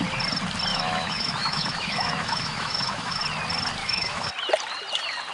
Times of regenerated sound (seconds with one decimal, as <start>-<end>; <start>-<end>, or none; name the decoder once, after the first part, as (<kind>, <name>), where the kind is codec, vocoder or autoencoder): 0.7-3.2 (autoencoder, DAC-VAE); 3.8-4.3